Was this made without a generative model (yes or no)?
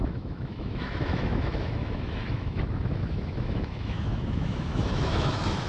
no